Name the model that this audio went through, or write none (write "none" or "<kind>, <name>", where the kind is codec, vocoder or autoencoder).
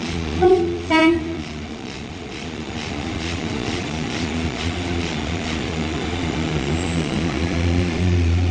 vocoder, Vocos